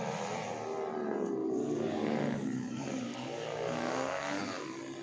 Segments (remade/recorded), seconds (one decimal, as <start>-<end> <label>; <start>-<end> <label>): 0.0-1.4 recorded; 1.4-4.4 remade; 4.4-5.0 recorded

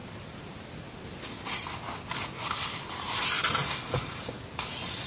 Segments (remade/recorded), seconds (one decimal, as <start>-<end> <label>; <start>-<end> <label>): 0.0-5.1 recorded

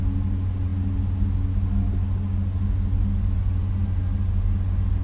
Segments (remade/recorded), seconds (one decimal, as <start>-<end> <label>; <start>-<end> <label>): 0.0-5.0 recorded

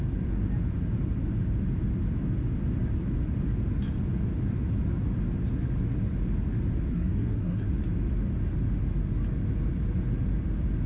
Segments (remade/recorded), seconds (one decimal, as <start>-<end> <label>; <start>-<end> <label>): 0.0-6.9 recorded; 6.9-7.7 remade; 7.7-10.9 recorded

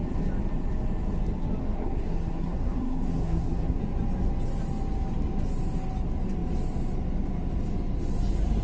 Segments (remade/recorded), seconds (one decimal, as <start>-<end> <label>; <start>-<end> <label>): 0.0-1.6 recorded; 1.6-3.8 remade; 3.8-8.6 recorded

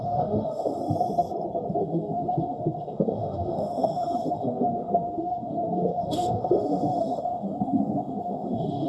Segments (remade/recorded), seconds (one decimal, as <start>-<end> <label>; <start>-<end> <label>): 0.0-0.8 remade; 0.8-1.7 recorded; 1.7-8.9 remade

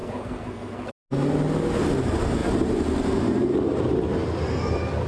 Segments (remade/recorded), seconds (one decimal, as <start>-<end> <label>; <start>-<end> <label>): 0.0-0.9 remade; 0.9-5.1 recorded

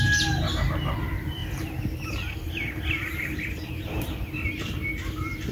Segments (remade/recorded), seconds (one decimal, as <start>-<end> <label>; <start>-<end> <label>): 0.0-5.5 recorded